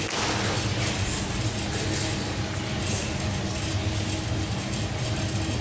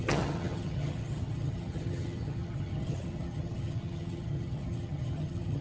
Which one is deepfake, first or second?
second